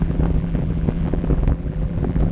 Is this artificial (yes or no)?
yes